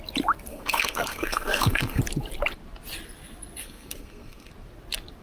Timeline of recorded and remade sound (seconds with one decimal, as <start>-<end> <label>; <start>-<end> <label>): 0.0-0.5 recorded; 0.5-2.0 remade; 2.0-3.6 recorded; 3.6-4.5 remade; 4.5-5.2 recorded